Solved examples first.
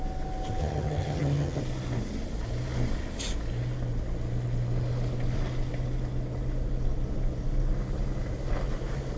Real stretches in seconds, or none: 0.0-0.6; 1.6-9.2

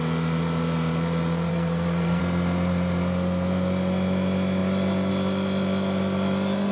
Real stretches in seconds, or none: 0.0-1.5; 2.2-6.7

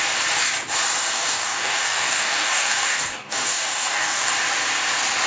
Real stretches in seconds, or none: 0.0-1.1; 4.3-5.3

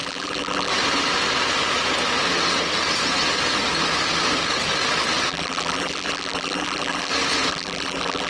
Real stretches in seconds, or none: 0.7-5.3; 7.1-7.5

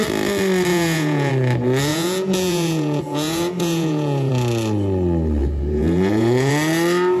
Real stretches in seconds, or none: 0.0-0.7; 1.3-1.9; 4.3-5.4; 6.5-7.2